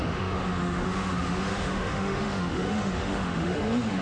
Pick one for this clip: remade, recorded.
remade